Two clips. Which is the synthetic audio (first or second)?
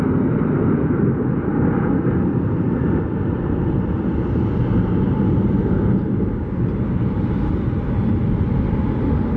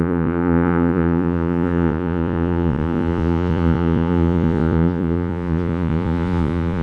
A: second